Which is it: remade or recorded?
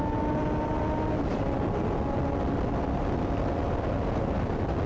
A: recorded